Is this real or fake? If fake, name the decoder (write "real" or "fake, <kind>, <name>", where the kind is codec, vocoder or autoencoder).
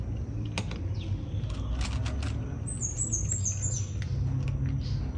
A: real